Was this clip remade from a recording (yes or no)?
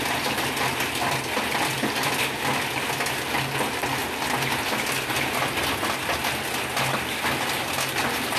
no